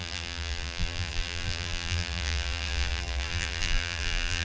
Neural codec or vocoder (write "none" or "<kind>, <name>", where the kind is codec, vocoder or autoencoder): vocoder, BigVGAN v2